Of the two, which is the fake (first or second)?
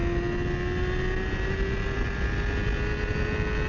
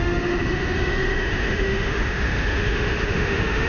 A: second